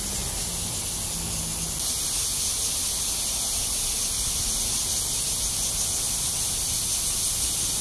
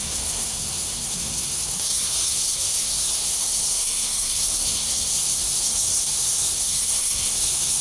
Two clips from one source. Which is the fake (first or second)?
second